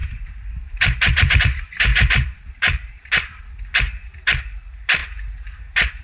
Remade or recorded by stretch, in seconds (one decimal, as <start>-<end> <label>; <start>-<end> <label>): 0.0-1.4 remade; 1.4-1.9 recorded; 1.9-3.4 remade; 3.4-6.0 recorded